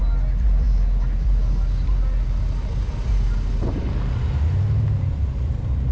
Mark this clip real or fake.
real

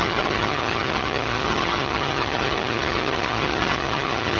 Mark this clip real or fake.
fake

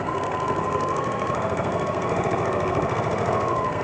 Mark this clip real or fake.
fake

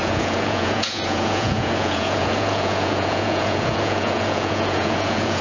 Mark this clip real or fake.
fake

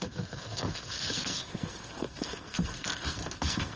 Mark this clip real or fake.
fake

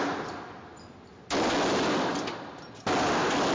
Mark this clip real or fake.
real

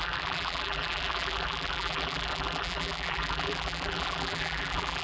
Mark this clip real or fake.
fake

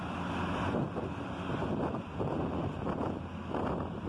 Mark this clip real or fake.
real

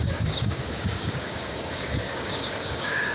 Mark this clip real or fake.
fake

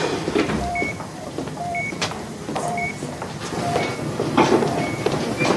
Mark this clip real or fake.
fake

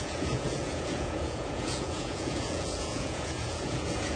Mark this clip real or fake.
fake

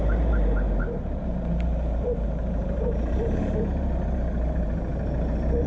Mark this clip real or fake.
fake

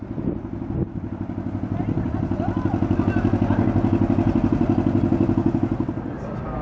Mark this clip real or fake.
real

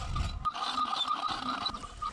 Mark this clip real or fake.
real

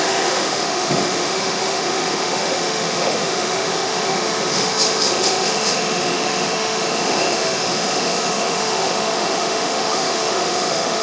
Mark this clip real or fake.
fake